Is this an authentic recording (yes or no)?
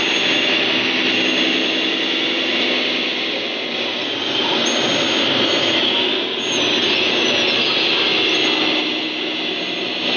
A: yes